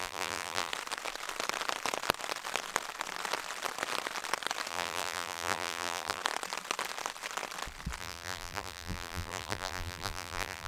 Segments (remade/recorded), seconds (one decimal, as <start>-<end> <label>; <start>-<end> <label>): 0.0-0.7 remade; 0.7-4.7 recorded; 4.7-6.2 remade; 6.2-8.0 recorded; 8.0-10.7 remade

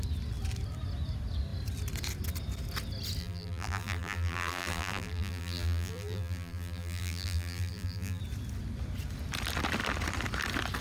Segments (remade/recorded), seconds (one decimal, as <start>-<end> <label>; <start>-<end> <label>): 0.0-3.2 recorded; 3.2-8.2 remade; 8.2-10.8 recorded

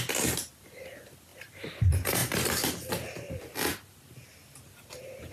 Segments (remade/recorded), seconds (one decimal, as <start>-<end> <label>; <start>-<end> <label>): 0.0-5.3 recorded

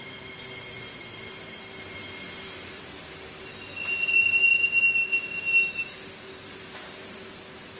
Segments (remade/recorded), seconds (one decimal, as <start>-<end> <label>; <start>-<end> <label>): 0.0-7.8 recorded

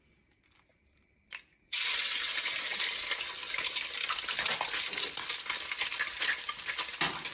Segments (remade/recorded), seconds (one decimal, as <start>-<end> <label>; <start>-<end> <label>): 0.0-0.7 recorded; 0.7-2.8 remade; 2.8-7.3 recorded